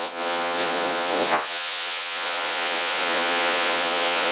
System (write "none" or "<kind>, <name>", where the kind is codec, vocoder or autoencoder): vocoder, Vocos